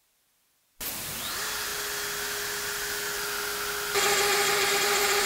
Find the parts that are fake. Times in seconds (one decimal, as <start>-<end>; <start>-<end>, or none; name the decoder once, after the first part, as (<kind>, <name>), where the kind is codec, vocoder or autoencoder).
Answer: none